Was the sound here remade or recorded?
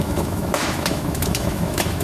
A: remade